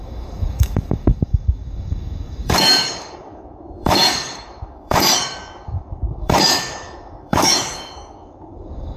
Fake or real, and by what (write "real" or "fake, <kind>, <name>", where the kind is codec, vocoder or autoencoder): fake, codec, DAC